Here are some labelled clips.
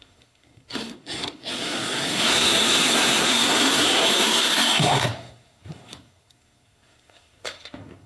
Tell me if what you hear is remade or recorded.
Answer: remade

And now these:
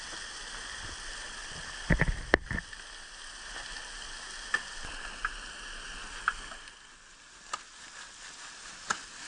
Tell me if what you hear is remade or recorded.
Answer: recorded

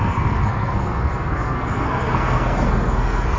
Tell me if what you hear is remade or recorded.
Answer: remade